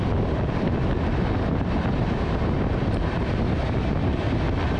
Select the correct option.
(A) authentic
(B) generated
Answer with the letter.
A